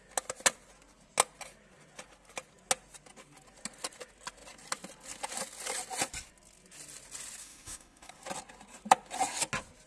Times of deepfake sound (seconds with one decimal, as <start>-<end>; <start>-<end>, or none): 7.4-8.1